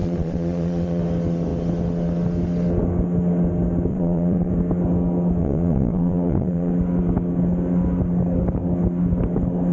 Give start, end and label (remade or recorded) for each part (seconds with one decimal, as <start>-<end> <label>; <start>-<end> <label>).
0.0-1.0 remade; 1.0-3.9 recorded; 3.9-4.5 remade; 4.5-5.4 recorded; 5.4-6.7 remade; 6.7-9.7 recorded